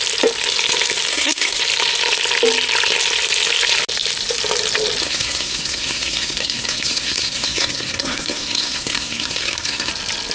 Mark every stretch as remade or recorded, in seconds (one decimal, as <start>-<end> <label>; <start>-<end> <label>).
0.0-1.1 recorded; 1.1-1.6 remade; 1.6-5.0 recorded; 5.0-9.9 remade; 9.9-10.3 recorded